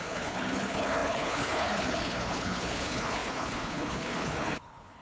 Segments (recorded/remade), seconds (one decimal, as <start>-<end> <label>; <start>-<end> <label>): 0.0-5.0 remade